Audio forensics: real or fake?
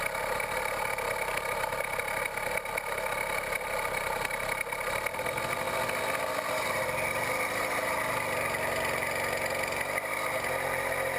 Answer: real